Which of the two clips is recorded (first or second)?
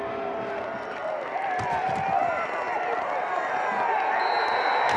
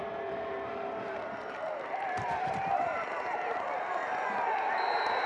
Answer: first